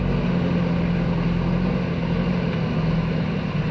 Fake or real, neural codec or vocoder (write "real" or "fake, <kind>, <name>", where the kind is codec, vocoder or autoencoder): real